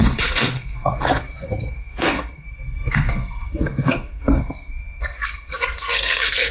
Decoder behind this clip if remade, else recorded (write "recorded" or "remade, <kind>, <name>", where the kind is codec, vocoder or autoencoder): remade, codec, SNAC